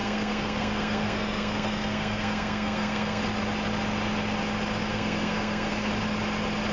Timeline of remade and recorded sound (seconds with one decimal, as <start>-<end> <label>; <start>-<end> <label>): 0.0-3.2 remade; 3.2-4.9 recorded; 4.9-5.9 remade; 5.9-6.7 recorded